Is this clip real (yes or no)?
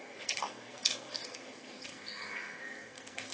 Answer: no